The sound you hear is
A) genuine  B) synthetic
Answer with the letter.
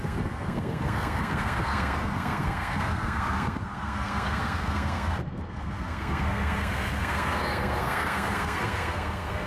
B